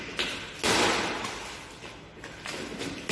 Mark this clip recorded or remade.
recorded